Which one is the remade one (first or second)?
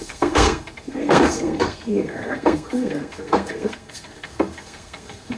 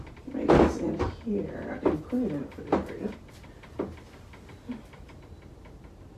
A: first